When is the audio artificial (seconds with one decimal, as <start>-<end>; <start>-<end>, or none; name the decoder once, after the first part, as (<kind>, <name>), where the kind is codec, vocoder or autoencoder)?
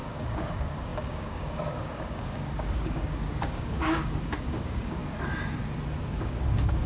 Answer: 0.0-5.0 (codec, DAC); 6.0-6.9